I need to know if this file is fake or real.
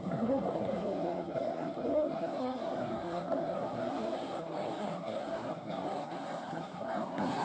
fake